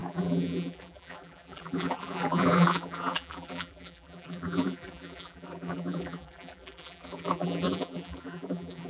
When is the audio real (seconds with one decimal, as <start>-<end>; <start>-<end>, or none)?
none